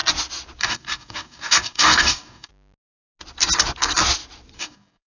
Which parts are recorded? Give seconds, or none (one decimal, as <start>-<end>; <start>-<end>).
0.0-0.6; 2.5-4.6